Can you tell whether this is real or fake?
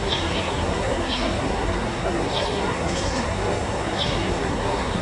fake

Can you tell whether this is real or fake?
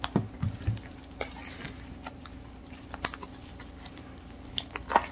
real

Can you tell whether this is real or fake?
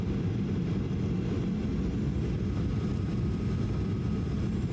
real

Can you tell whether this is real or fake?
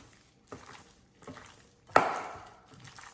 real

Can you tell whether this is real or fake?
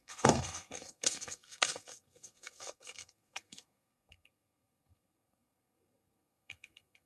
fake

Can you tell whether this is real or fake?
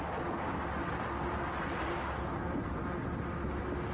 real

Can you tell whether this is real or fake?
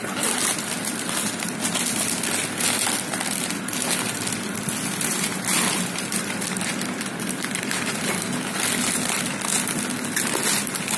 real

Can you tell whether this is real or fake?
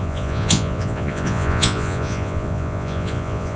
fake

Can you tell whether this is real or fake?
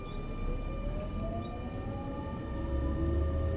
real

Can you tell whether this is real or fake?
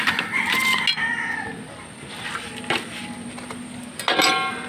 real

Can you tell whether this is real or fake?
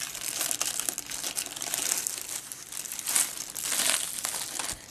real